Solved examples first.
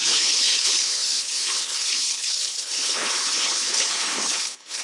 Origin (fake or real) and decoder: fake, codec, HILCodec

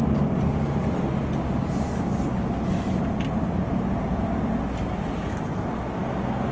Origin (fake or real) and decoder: real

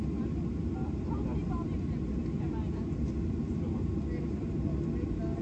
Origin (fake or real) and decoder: real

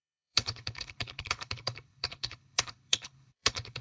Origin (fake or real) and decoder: fake, codec, HILCodec